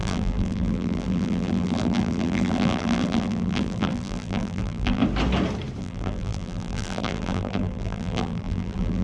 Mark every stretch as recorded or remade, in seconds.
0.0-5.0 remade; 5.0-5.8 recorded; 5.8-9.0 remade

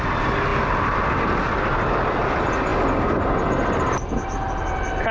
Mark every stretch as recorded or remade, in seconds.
0.0-5.1 recorded

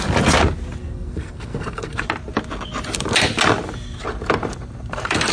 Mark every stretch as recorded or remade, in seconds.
0.0-0.8 recorded; 0.8-2.0 remade; 2.0-5.3 recorded